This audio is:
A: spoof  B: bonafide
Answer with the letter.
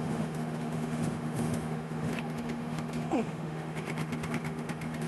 A